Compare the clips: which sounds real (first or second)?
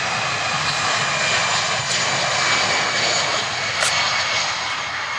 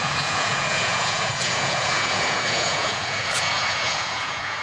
first